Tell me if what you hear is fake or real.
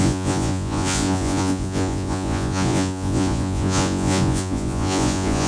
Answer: fake